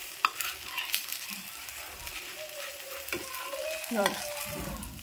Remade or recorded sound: remade